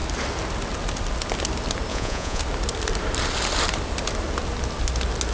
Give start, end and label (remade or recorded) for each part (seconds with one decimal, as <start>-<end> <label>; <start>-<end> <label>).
0.0-1.9 recorded; 1.9-2.4 remade; 2.4-5.3 recorded